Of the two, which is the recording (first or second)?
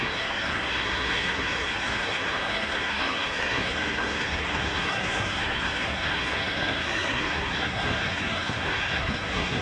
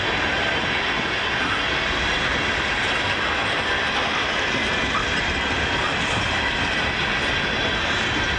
second